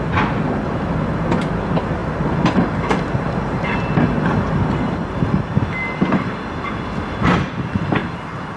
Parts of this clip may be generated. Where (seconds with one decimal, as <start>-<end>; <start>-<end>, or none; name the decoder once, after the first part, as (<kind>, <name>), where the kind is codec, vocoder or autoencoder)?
none